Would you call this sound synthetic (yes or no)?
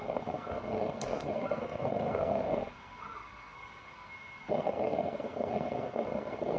yes